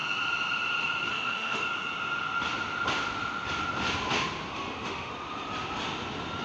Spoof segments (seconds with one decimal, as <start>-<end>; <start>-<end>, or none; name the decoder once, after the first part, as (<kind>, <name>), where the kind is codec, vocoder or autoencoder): 1.1-1.6 (autoencoder, DAC-VAE); 4.5-5.1